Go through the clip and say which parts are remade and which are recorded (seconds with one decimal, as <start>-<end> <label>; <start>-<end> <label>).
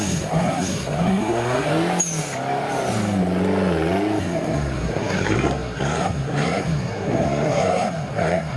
0.0-1.7 remade; 1.7-4.2 recorded; 4.2-8.6 remade